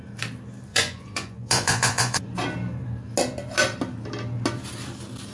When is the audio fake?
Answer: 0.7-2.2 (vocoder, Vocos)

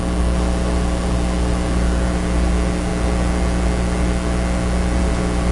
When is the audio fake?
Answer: none

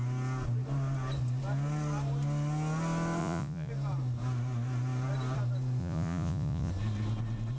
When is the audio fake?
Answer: 3.2-3.7 (vocoder, Vocos); 5.8-6.7

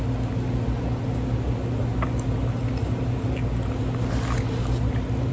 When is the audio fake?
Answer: none

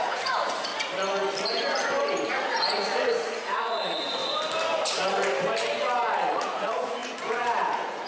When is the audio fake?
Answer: 0.0-0.7 (vocoder, Vocos); 2.3-4.2; 6.1-8.1

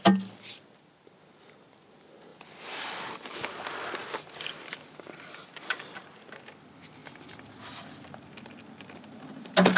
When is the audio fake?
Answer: none